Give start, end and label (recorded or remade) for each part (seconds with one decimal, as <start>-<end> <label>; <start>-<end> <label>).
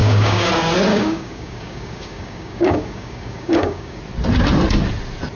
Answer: 0.0-0.5 remade; 0.5-0.9 recorded; 0.9-4.0 remade; 4.0-5.4 recorded